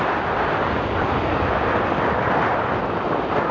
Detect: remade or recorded recorded